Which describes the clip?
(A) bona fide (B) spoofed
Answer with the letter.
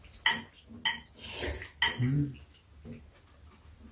A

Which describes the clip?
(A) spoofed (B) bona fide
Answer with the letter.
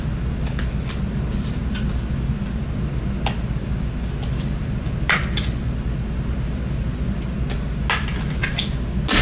B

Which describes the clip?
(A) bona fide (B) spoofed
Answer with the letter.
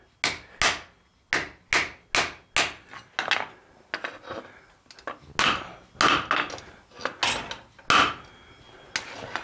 A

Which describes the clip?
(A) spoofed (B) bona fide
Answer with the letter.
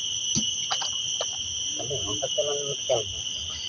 B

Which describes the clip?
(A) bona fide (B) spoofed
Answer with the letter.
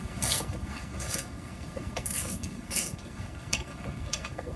B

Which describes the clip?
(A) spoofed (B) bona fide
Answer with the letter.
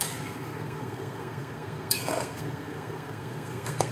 A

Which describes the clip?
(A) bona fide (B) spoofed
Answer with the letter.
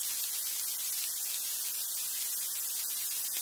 A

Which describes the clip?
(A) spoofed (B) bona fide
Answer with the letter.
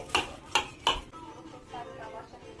B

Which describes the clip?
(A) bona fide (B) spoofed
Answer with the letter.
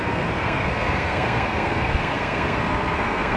B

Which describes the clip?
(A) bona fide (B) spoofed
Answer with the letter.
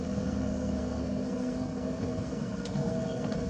B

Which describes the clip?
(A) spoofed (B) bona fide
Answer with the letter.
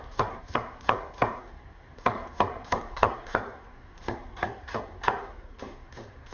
A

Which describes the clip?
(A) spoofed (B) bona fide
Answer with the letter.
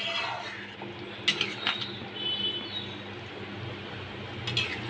B